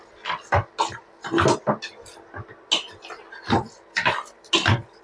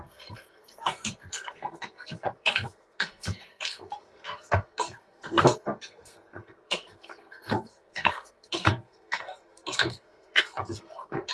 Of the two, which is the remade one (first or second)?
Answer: second